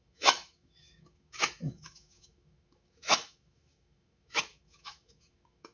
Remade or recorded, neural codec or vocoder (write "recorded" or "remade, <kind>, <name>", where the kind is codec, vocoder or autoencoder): remade, autoencoder, DAC-VAE